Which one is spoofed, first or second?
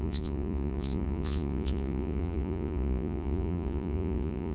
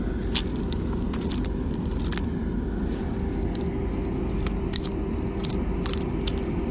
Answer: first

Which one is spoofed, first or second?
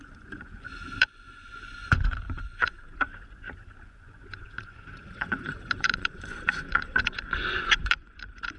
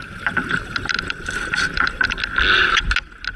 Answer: first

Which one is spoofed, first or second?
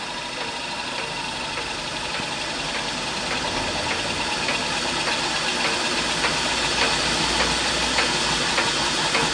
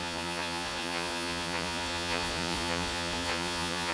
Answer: second